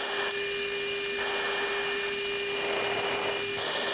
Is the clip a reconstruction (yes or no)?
no